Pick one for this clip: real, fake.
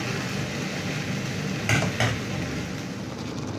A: real